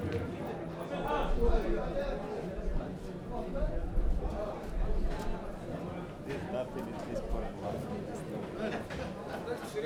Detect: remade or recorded recorded